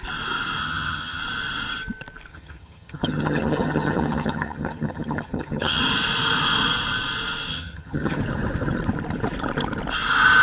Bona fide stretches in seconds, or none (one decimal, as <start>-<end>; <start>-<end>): 0.0-0.6; 1.2-2.3; 5.8-7.5; 8.2-10.4